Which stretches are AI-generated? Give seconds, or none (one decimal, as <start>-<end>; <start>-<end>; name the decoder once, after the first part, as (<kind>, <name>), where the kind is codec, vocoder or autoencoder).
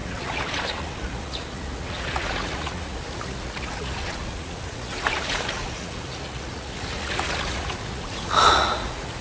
0.0-9.2 (vocoder, Vocos)